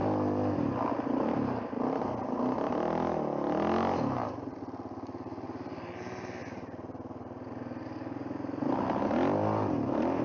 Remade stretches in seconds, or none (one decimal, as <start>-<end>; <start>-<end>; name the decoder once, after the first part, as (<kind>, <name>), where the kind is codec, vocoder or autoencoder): none

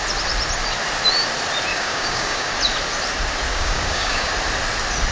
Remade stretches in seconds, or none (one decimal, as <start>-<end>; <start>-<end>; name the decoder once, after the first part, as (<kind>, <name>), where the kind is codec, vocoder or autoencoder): 1.7-2.5 (codec, DAC); 3.5-4.3

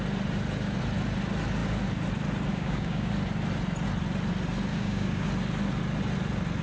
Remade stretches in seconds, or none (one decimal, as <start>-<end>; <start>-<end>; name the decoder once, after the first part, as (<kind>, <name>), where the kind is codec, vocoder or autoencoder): 2.5-3.1 (codec, DAC); 4.7-5.3

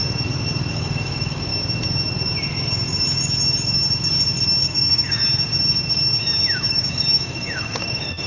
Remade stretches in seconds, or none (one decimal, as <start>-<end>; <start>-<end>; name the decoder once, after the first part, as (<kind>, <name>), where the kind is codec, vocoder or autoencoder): 0.7-1.5 (codec, DAC); 4.6-5.2; 6.7-8.3

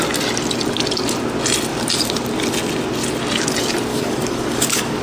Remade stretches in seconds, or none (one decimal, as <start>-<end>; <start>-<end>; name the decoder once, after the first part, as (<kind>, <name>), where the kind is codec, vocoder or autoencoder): 3.9-5.0 (codec, DAC)

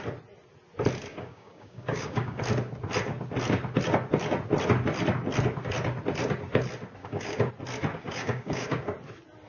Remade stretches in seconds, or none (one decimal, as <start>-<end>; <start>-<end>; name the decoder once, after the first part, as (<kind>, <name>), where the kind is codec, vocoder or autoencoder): 1.1-2.4 (codec, DAC); 7.0-7.5; 7.9-8.8

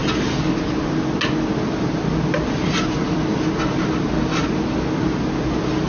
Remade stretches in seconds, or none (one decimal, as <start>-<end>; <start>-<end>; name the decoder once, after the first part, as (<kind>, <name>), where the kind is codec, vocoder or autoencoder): none